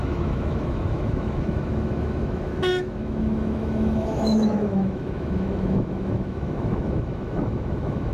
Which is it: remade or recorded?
remade